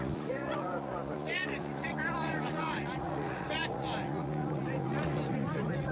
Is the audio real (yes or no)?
no